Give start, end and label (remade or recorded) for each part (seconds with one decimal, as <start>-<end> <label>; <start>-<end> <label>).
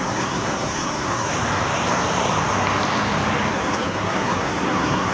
0.0-1.3 remade; 1.3-3.5 recorded; 3.5-5.1 remade